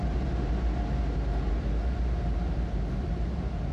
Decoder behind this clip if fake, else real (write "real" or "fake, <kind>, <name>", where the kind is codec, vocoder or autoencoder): real